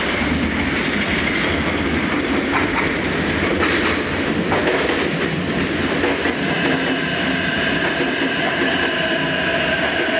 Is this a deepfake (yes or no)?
no